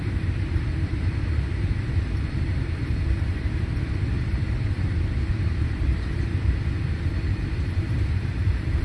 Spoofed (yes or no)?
yes